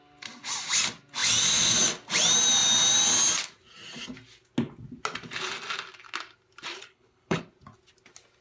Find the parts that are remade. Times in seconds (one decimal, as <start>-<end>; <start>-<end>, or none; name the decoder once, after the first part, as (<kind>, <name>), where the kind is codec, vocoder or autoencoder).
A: 6.9-7.4 (codec, HILCodec)